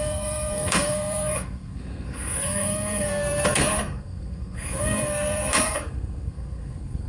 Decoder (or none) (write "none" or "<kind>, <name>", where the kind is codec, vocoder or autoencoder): codec, SNAC